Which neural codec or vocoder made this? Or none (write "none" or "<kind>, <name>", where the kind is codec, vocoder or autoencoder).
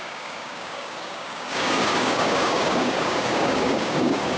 codec, DAC